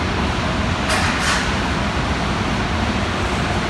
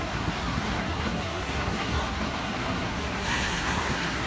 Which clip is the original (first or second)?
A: first